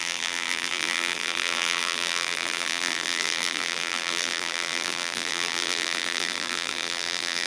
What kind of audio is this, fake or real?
fake